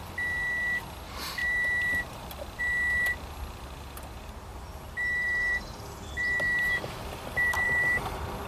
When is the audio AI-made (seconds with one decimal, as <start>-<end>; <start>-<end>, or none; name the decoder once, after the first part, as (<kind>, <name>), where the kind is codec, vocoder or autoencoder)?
1.4-2.6 (vocoder, BigVGAN v2); 4.5-8.5